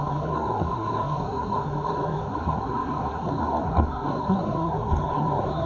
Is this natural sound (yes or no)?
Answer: no